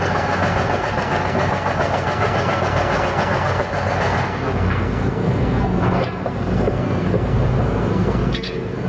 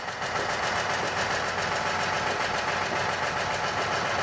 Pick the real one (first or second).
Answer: second